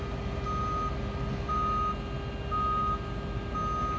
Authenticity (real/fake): real